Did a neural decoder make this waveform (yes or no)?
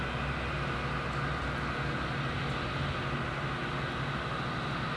no